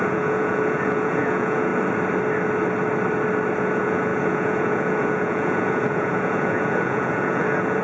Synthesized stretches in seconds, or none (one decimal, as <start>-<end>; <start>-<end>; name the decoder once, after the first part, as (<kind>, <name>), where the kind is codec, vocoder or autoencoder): 0.0-1.7 (vocoder, Vocos); 3.6-7.8